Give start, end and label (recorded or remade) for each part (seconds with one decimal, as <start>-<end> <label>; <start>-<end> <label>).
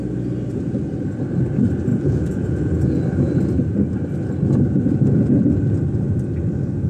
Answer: 0.0-1.9 recorded; 1.9-3.0 remade; 3.0-6.9 recorded